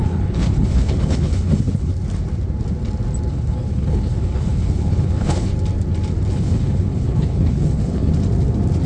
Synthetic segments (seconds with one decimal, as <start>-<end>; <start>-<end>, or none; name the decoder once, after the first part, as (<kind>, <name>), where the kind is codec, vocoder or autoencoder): 0.0-1.9 (codec, HILCodec); 3.3-5.5; 6.3-8.1